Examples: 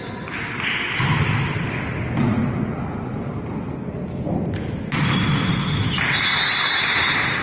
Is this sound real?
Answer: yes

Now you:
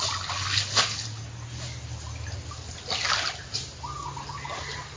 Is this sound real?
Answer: yes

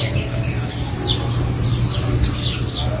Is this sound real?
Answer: yes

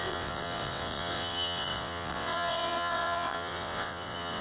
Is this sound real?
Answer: no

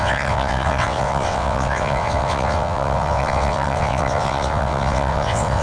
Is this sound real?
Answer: no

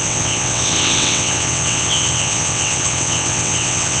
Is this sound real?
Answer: no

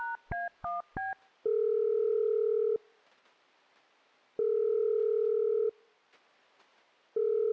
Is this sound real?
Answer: yes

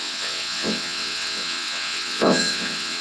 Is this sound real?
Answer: no